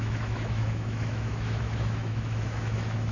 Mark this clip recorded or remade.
remade